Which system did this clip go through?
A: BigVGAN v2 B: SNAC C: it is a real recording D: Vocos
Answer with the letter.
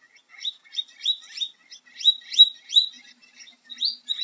C